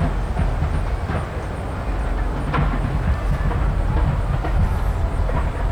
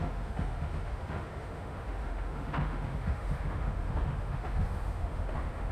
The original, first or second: first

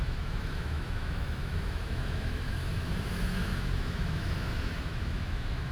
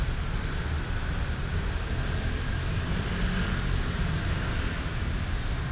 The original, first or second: second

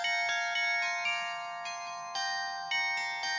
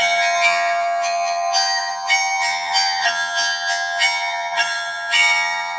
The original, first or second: first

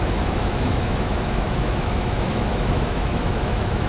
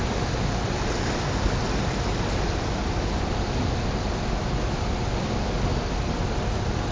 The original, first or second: second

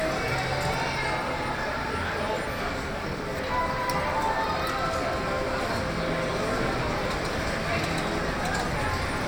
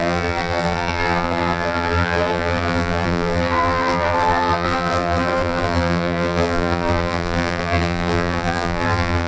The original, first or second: first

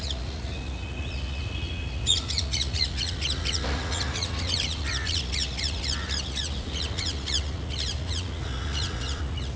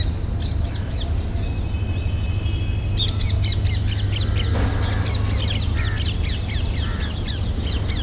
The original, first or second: second